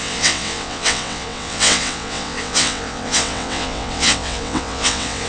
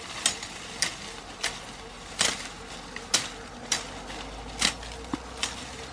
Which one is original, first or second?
second